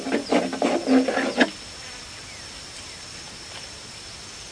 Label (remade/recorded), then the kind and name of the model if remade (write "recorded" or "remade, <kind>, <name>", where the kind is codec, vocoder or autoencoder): recorded